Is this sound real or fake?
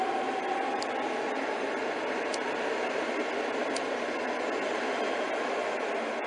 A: real